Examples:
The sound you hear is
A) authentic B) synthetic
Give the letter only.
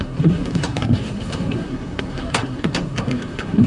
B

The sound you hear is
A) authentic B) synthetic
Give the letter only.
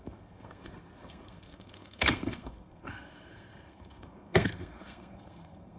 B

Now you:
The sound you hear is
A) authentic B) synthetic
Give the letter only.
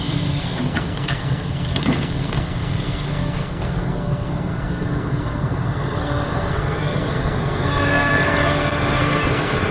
B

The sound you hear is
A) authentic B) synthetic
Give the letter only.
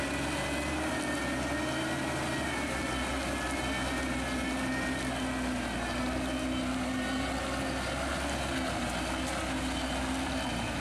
A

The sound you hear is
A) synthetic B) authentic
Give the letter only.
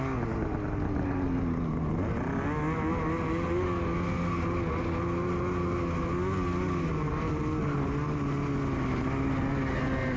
B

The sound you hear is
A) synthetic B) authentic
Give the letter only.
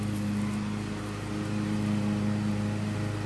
B